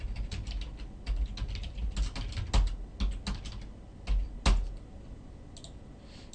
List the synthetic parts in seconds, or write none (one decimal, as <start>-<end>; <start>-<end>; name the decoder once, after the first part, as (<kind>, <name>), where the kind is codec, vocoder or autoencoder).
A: none